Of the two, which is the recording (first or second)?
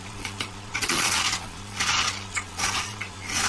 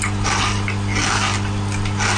second